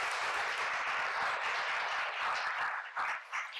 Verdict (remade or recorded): recorded